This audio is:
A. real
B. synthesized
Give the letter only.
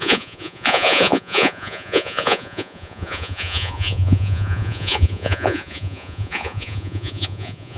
B